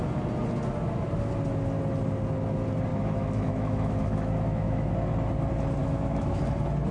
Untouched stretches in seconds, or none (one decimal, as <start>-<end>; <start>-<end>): 0.0-2.9; 4.9-5.8; 6.4-6.9